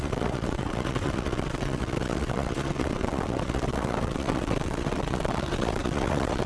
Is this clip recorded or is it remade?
remade